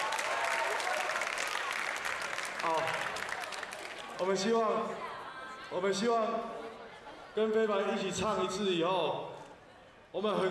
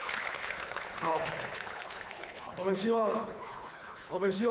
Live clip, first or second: first